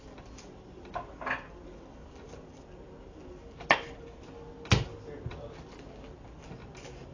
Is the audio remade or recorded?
recorded